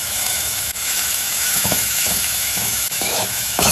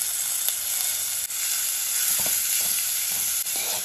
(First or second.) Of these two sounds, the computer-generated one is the first